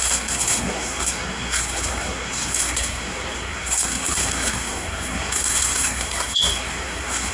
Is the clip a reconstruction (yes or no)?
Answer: yes